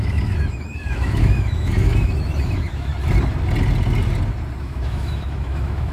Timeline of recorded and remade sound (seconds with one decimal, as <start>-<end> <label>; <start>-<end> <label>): 0.0-2.9 remade; 2.9-4.6 recorded; 4.6-5.9 remade